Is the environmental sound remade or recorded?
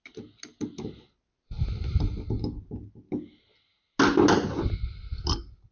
recorded